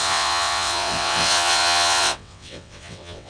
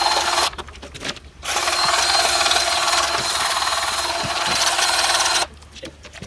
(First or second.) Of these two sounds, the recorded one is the second